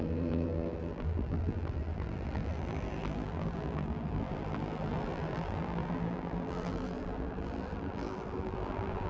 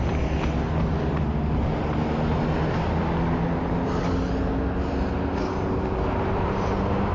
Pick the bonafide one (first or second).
second